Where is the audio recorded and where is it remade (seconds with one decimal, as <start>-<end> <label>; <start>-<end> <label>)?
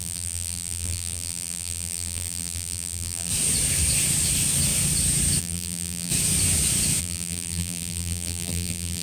0.0-3.3 remade; 3.3-5.4 recorded; 5.4-6.1 remade; 6.1-7.0 recorded; 7.0-9.0 remade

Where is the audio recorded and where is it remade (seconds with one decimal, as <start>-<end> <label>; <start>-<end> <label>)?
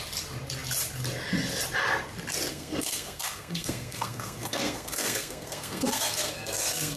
0.0-2.5 recorded; 2.5-7.0 remade